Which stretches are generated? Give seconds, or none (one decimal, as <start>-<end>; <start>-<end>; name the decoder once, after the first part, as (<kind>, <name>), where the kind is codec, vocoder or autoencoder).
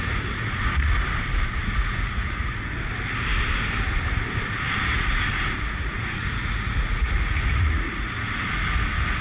0.0-1.0 (vocoder, Vocos); 1.6-2.7; 4.9-8.4